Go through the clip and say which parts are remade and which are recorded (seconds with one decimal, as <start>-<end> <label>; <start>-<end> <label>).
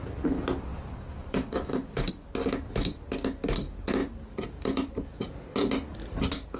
0.0-0.7 recorded; 0.7-2.1 remade; 2.1-4.0 recorded; 4.0-5.2 remade; 5.2-6.6 recorded